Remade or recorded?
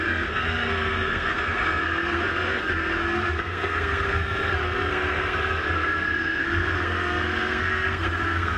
remade